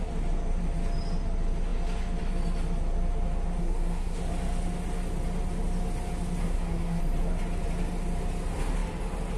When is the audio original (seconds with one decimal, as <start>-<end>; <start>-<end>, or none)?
0.0-3.6; 4.2-6.4; 7.0-9.4